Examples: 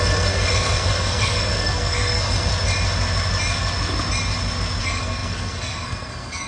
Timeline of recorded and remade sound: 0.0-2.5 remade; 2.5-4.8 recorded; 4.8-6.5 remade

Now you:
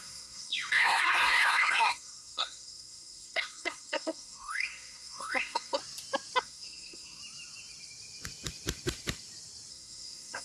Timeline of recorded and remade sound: 0.0-5.8 remade; 5.8-6.4 recorded; 6.4-7.2 remade; 7.2-9.7 recorded; 9.7-10.4 remade

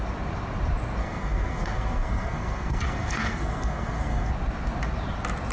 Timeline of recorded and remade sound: 0.0-1.0 recorded; 1.0-4.3 remade; 4.3-5.5 recorded

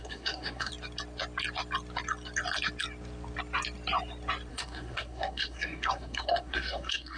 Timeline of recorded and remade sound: 0.0-0.7 remade; 0.7-4.5 recorded; 4.5-7.2 remade

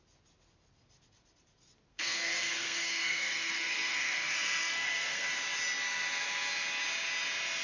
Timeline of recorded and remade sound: 0.0-1.9 recorded; 1.9-5.3 remade; 5.3-7.6 recorded

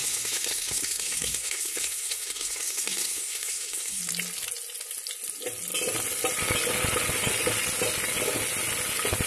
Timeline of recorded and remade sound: 0.0-4.0 remade; 4.0-9.3 recorded

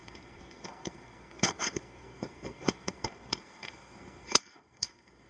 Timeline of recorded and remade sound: 0.0-5.3 remade